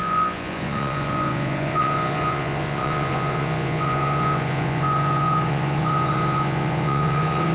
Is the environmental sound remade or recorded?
remade